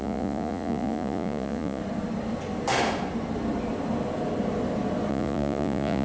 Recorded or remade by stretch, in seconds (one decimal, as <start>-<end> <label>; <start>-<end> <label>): 0.0-1.8 remade; 1.8-5.1 recorded; 5.1-6.0 remade